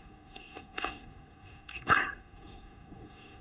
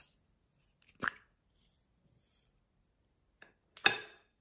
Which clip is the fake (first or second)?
first